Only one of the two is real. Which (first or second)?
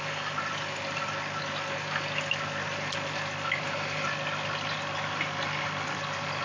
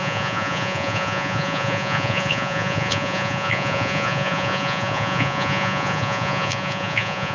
first